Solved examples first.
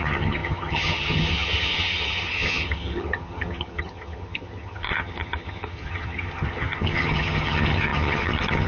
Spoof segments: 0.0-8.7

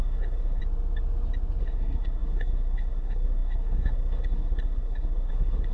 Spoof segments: 0.0-0.6; 1.6-5.7

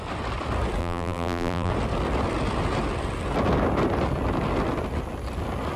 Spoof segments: 0.8-1.7

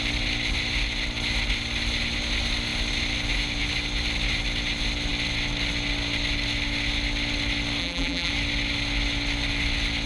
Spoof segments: 7.8-8.3